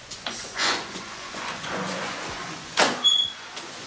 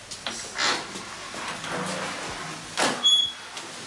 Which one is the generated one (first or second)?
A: first